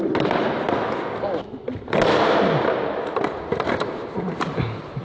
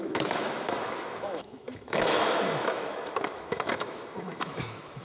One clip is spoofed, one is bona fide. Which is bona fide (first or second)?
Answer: first